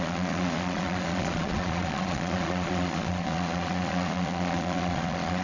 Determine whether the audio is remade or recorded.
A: remade